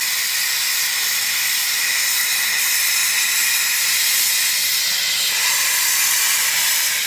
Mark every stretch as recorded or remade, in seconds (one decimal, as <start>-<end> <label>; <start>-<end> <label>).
0.0-5.4 recorded; 5.4-6.5 remade; 6.5-7.1 recorded